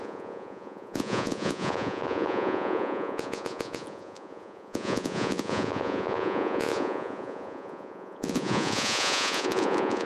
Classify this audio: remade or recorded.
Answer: remade